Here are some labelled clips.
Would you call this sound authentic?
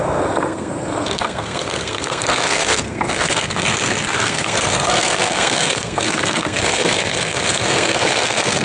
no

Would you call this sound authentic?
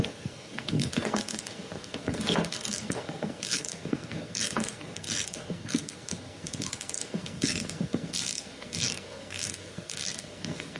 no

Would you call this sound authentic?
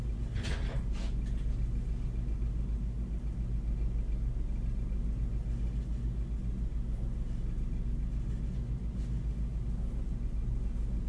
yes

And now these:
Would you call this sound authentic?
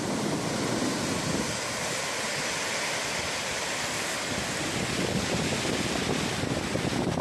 yes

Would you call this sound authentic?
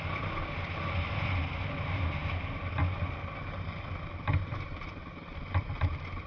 yes